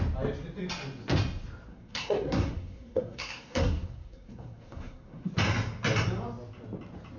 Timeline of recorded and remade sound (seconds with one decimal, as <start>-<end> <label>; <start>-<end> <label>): 0.0-1.7 recorded; 1.7-5.3 remade; 5.3-7.2 recorded